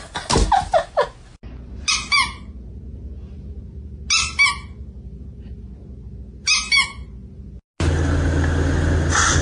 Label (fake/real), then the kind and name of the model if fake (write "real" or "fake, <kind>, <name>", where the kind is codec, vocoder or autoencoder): real